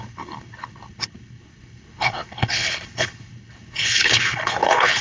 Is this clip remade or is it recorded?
remade